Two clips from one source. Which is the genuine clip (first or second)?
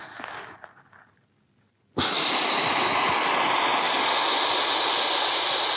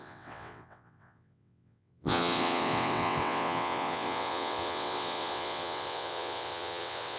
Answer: first